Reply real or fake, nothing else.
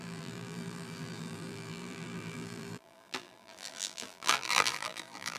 fake